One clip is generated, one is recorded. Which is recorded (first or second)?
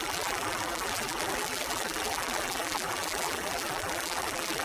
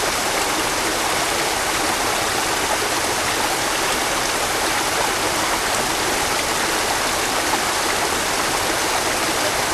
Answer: second